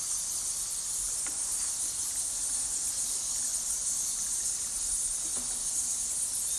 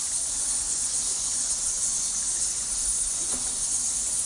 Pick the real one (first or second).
first